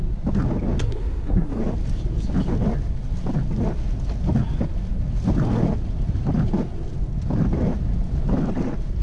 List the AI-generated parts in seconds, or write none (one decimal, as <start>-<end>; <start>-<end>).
0.8-1.6